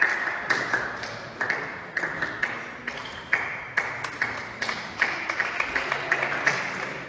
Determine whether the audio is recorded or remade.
recorded